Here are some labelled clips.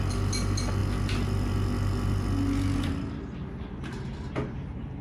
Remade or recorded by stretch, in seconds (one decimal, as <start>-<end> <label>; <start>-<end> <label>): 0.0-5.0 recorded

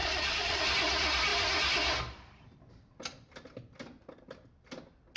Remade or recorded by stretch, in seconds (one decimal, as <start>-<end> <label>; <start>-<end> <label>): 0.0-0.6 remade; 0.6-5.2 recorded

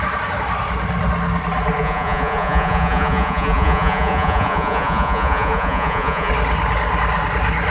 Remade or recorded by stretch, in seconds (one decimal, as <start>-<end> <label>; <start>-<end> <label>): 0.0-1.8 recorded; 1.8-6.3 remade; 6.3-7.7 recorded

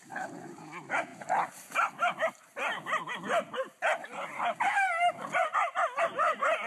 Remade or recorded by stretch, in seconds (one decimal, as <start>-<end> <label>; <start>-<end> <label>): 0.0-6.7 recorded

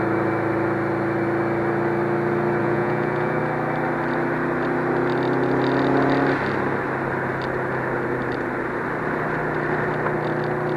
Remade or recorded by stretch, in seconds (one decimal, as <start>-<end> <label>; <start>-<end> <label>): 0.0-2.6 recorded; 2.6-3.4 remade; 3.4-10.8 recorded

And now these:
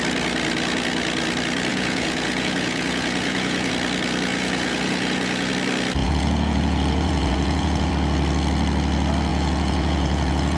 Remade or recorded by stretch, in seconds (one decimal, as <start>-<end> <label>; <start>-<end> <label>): 0.0-1.7 recorded; 1.7-3.7 remade; 3.7-4.3 recorded; 4.3-5.5 remade; 5.5-6.0 recorded; 6.0-7.9 remade; 7.9-9.3 recorded; 9.3-10.6 remade